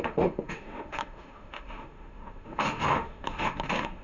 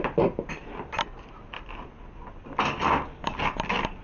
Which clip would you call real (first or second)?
second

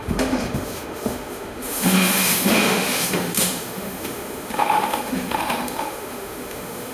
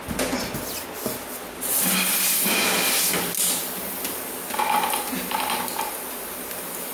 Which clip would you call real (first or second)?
second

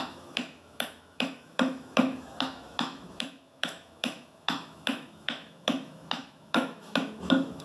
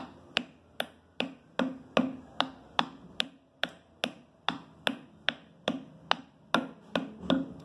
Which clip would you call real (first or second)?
second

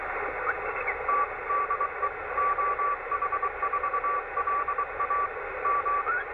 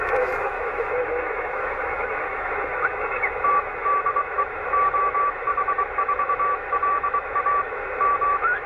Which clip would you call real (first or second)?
first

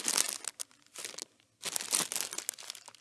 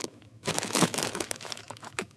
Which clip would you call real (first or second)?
first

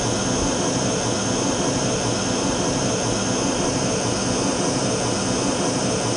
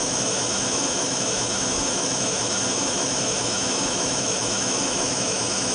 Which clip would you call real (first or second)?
first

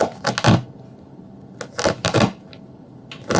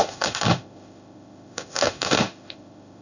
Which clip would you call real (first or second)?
first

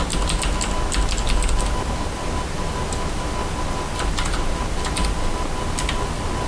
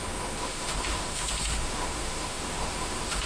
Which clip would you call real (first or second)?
first